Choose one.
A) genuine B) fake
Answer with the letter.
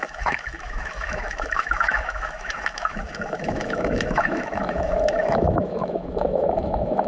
B